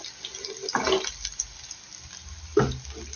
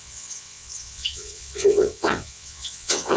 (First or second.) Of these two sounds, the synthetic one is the second